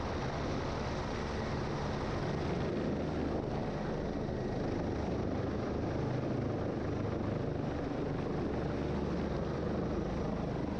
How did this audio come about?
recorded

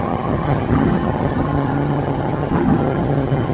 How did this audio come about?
remade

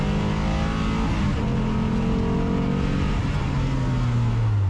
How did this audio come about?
recorded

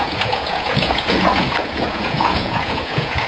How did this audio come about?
remade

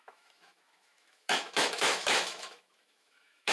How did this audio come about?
remade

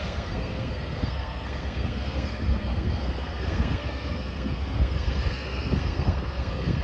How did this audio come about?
remade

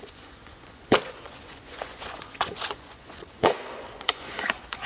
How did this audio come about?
remade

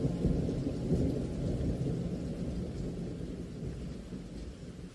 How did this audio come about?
recorded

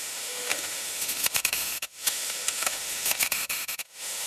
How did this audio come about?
remade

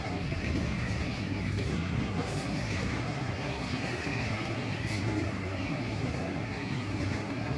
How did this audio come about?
remade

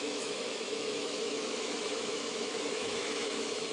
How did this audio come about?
remade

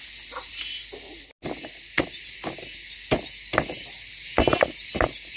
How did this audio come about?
recorded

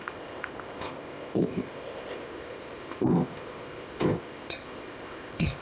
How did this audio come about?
remade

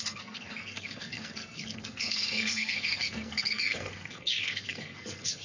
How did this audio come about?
remade